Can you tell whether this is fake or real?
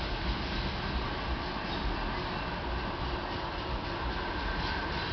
real